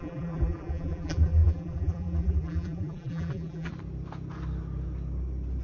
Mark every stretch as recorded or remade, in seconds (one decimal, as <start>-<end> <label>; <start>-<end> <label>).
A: 0.0-3.7 remade; 3.7-5.6 recorded